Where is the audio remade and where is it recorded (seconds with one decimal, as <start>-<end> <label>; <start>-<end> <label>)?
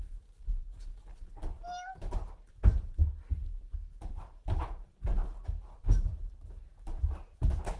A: 0.0-1.1 remade; 1.1-2.5 recorded; 2.5-3.0 remade; 3.0-4.0 recorded; 4.0-7.8 remade